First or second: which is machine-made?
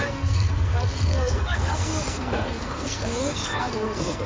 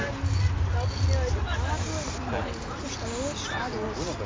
first